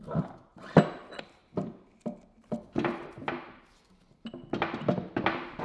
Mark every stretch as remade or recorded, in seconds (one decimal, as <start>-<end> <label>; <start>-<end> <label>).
0.0-5.6 recorded